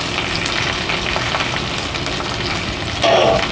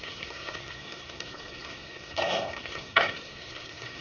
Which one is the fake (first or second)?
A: second